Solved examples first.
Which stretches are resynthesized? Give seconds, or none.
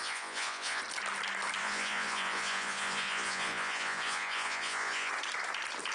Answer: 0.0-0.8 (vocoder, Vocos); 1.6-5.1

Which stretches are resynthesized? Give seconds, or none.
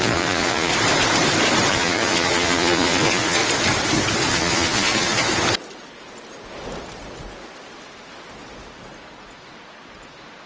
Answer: 0.0-0.7 (vocoder, Vocos); 1.7-3.4; 4.3-5.2